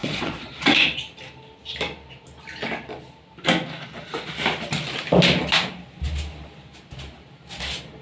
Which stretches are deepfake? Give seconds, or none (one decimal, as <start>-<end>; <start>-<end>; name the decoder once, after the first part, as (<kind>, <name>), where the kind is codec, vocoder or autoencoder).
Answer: 0.0-0.5 (vocoder, Vocos)